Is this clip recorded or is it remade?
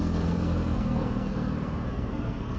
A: remade